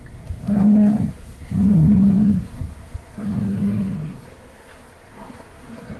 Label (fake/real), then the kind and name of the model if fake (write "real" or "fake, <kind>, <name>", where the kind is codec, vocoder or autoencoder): fake, codec, SNAC